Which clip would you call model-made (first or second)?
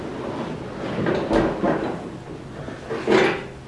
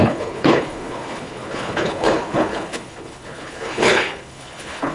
second